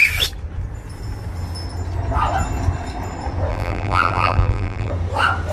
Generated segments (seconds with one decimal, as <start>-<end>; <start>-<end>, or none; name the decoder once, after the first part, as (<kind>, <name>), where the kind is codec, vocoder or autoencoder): 3.5-4.9 (vocoder, BigVGAN v2)